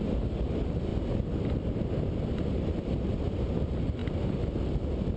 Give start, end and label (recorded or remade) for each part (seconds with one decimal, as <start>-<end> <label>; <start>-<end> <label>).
0.0-5.2 recorded